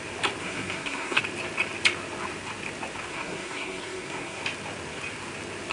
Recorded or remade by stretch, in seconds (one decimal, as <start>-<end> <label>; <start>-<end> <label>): 0.0-0.4 recorded; 0.4-1.2 remade; 1.2-3.1 recorded; 3.1-4.4 remade; 4.4-5.7 recorded